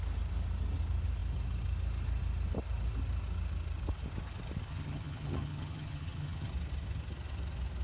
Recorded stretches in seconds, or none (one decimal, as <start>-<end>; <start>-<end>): 0.0-4.7; 6.5-7.8